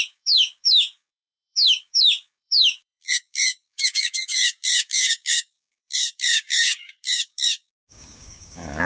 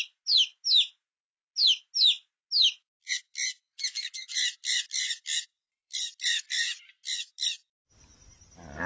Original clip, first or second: second